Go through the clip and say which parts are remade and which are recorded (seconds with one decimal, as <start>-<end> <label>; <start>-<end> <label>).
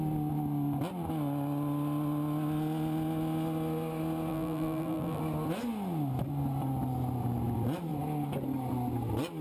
0.0-4.3 recorded; 4.3-5.2 remade; 5.2-9.4 recorded